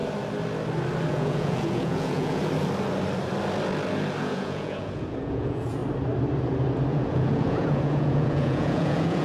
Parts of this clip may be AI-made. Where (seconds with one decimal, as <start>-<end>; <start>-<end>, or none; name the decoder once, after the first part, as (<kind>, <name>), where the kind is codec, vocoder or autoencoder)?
1.1-2.4 (vocoder, Vocos); 4.2-5.8; 6.9-9.2